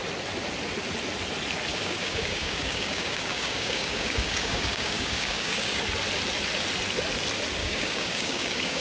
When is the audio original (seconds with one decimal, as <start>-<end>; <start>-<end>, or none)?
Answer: 0.0-1.7; 5.8-7.6